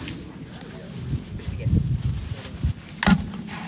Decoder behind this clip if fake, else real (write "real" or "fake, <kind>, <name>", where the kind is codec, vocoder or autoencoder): real